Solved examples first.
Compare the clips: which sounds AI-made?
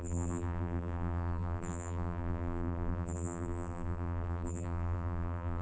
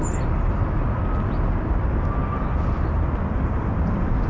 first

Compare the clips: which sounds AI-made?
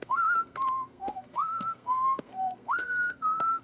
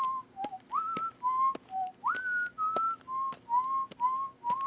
first